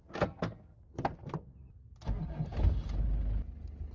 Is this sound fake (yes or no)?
no